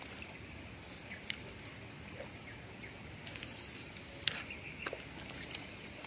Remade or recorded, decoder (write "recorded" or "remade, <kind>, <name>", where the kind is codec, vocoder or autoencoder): recorded